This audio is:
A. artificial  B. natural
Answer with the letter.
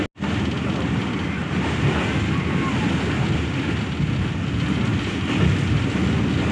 B